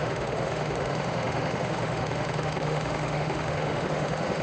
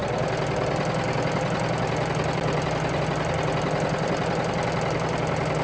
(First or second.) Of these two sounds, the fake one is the first